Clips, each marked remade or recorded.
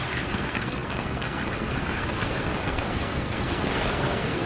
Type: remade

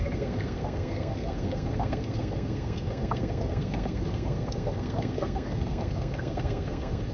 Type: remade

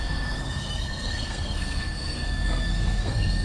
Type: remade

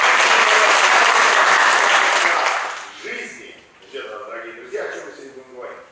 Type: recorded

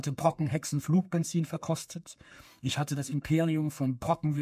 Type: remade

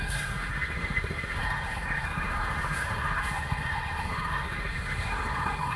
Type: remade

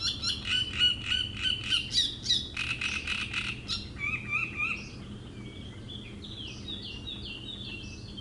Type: recorded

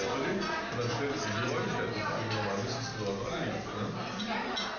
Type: recorded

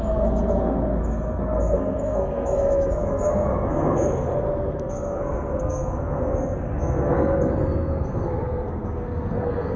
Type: remade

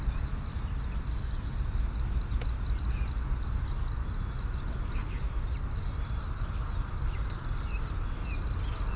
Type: recorded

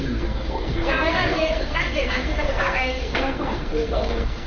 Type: remade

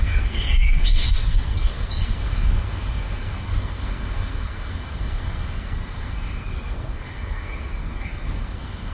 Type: remade